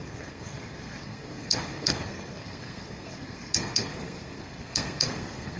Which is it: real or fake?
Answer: fake